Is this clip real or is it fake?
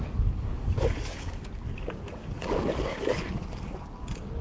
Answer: fake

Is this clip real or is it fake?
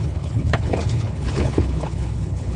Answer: fake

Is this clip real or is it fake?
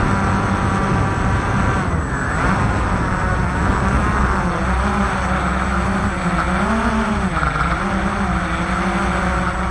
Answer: real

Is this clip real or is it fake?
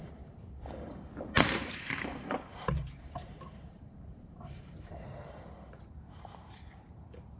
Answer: fake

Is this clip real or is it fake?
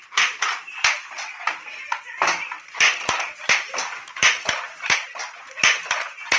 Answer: real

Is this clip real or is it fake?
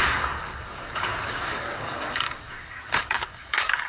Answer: fake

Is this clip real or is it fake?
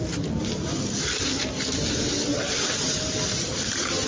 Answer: real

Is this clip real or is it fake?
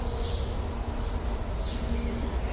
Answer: real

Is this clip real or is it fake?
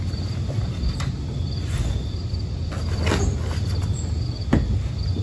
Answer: real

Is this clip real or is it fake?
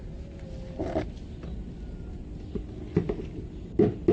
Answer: real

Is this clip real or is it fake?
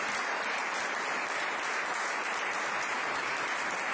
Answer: real